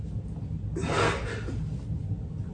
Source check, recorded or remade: recorded